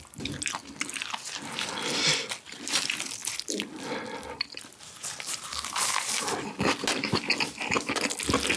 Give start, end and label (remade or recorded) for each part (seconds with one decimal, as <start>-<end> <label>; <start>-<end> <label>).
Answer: 0.0-8.6 recorded